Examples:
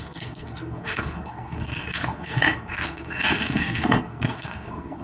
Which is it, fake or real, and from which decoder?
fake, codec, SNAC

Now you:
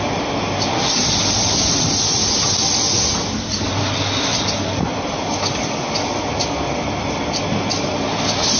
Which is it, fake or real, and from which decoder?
real